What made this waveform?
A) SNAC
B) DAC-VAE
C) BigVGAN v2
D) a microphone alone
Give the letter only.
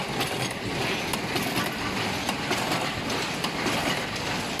D